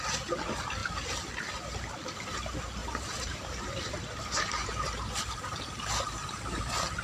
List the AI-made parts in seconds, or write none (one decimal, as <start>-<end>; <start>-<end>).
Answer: 2.8-6.6